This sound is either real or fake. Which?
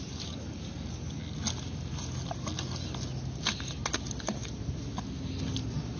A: real